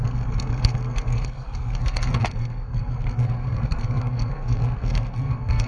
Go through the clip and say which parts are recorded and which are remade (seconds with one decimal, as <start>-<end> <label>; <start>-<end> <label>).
0.0-5.7 remade